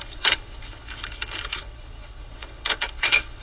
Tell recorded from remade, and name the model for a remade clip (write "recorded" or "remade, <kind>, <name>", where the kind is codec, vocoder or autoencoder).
remade, codec, HILCodec